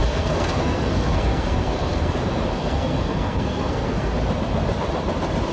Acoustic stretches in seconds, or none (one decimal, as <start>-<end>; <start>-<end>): 4.1-5.5